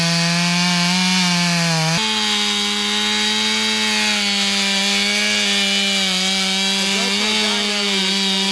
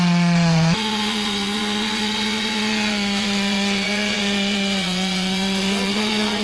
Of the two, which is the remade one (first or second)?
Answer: second